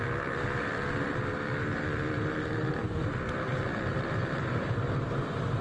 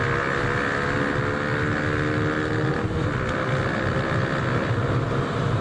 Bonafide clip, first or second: second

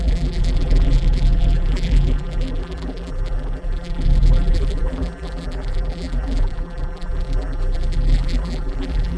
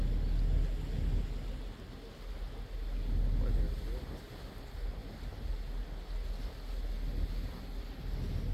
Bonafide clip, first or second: second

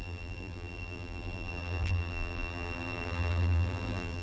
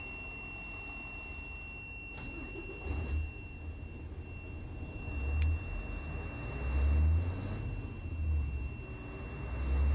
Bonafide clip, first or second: second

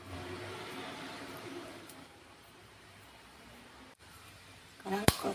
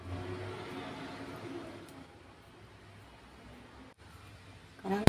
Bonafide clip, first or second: second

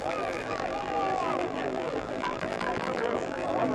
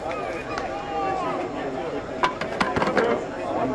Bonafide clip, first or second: second